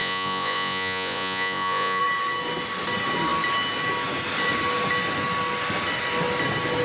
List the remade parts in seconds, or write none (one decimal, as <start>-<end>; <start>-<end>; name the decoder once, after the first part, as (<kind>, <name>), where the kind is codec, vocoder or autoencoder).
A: 0.0-2.0 (vocoder, Vocos)